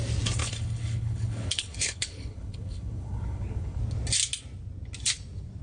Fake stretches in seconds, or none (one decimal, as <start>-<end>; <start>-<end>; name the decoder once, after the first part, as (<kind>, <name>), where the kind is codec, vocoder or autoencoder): 0.4-3.8 (codec, HILCodec)

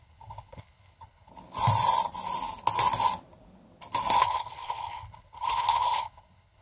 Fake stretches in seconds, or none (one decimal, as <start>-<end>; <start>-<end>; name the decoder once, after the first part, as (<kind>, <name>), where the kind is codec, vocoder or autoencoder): 0.0-1.3 (codec, HILCodec); 4.2-6.6

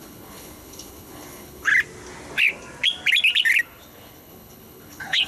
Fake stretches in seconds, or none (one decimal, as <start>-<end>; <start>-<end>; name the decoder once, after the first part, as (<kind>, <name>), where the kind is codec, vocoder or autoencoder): 0.0-1.7 (codec, HILCodec); 3.6-5.3

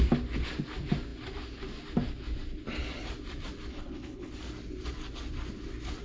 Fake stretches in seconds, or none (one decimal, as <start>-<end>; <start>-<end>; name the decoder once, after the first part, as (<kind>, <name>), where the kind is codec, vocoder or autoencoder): 3.7-4.3 (codec, HILCodec)

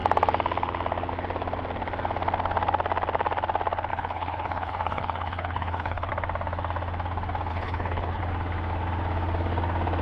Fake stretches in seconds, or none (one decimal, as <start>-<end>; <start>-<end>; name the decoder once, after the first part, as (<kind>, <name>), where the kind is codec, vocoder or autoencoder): 3.9-6.1 (codec, HILCodec); 7.5-8.2

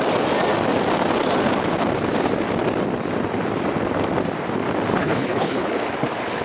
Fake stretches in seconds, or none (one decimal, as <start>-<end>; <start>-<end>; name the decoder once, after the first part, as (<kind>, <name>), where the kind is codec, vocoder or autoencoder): 4.9-5.7 (codec, HILCodec)

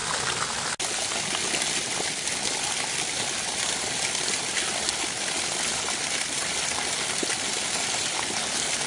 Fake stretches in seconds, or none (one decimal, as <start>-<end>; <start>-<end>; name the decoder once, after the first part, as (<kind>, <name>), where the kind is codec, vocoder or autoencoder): none